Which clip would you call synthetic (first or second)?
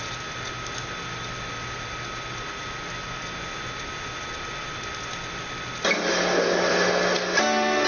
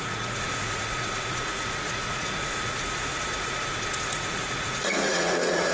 second